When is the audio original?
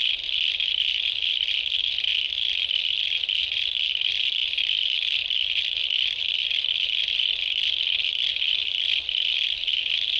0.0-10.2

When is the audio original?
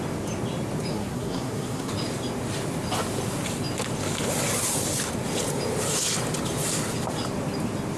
0.0-0.9; 1.9-8.0